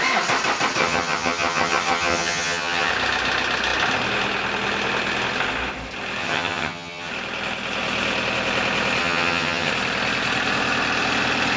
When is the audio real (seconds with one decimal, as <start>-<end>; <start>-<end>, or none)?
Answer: 0.0-0.8; 2.9-6.2; 7.1-9.0; 9.7-11.6